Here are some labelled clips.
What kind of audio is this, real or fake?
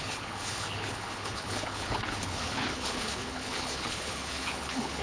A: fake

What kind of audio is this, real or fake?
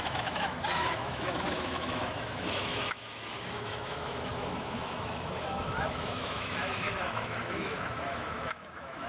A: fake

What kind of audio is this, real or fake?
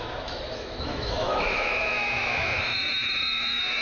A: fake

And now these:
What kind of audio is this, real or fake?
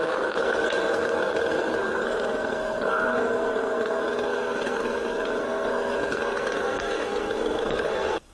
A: fake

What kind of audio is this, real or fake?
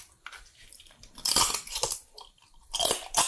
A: real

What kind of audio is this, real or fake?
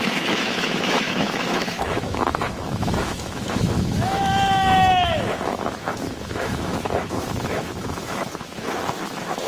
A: fake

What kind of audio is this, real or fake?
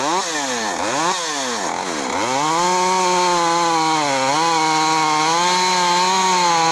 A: real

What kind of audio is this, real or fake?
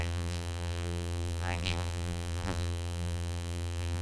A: fake